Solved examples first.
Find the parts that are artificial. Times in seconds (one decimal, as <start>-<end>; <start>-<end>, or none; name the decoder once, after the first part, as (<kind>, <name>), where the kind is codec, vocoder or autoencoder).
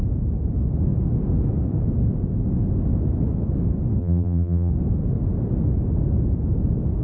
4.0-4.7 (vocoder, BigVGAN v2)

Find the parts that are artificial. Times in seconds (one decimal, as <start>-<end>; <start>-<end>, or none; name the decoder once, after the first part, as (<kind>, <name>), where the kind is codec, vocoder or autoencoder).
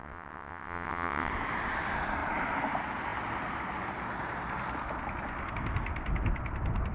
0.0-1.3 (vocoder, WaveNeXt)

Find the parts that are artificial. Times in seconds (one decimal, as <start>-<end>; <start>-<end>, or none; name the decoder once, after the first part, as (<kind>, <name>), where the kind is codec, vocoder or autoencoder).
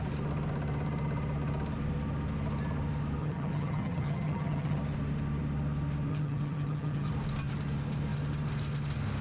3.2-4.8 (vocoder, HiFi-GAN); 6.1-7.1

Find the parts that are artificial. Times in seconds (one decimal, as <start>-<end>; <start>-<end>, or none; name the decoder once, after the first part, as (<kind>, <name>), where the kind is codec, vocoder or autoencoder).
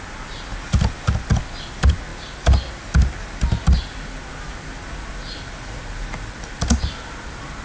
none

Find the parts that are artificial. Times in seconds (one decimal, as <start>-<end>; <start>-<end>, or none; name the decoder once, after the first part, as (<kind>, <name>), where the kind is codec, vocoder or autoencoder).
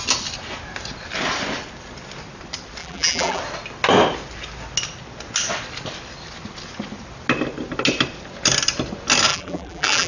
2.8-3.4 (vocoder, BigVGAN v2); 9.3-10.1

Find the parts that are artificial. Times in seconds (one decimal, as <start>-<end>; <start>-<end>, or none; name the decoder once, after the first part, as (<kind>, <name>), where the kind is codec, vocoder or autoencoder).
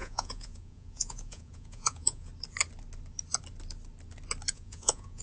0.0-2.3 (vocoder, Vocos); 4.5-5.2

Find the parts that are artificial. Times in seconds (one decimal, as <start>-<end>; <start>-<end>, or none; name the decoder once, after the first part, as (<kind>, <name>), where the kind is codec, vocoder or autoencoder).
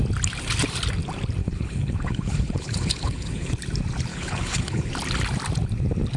1.4-3.5 (codec, HILCodec); 4.1-4.9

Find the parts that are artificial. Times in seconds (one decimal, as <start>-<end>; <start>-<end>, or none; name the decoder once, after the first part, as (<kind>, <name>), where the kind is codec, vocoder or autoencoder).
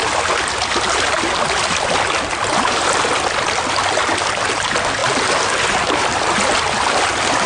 none